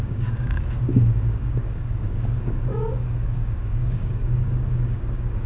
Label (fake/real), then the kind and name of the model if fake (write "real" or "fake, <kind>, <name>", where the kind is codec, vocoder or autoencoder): fake, codec, DAC